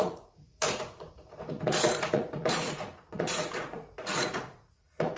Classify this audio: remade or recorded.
remade